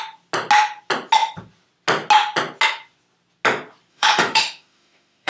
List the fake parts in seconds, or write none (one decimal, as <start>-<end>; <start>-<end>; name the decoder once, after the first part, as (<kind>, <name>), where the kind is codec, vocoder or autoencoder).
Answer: 3.9-5.3 (autoencoder, DAC-VAE)